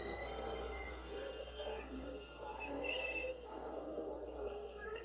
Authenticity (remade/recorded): remade